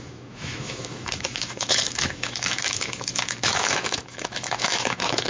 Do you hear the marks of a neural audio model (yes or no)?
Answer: yes